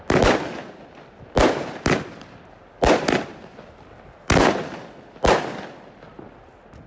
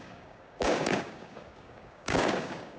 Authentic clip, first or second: first